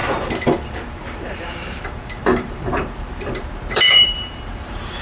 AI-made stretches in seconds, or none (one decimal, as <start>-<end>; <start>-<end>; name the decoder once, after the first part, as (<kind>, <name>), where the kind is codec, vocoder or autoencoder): 0.0-5.0 (vocoder, BigVGAN v2)